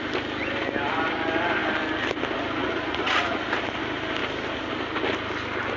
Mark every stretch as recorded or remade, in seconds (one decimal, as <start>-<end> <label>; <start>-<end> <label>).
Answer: 0.0-2.6 recorded; 2.6-3.4 remade; 3.4-5.8 recorded